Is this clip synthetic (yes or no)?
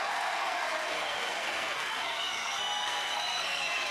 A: yes